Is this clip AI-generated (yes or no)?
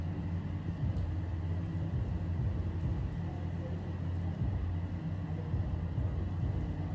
no